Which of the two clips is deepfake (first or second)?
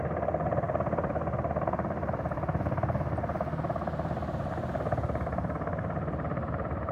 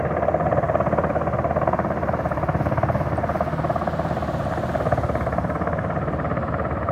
first